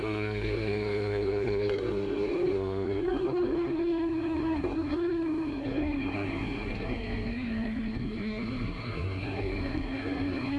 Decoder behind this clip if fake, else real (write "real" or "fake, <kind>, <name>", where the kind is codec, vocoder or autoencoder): fake, codec, SNAC